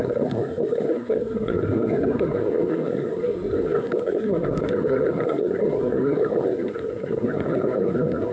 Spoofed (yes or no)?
yes